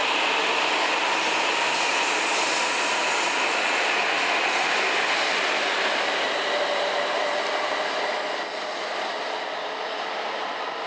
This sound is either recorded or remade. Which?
recorded